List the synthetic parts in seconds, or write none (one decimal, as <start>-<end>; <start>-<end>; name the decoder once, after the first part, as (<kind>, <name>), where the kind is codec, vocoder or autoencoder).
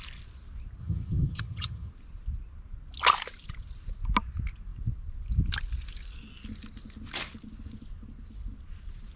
0.8-1.9 (vocoder, HiFi-GAN)